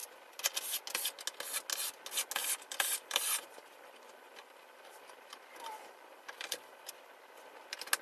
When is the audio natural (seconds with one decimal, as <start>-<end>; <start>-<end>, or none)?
0.0-2.4; 6.9-8.0